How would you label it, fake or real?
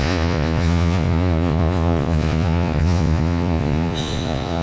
fake